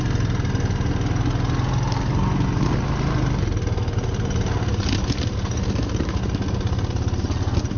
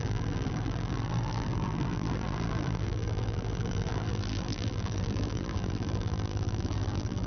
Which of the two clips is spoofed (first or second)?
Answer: second